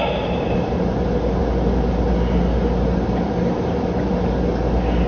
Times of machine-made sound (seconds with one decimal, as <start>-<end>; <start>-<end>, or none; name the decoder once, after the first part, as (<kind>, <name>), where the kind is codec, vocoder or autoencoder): none